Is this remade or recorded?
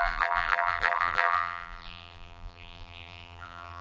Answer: remade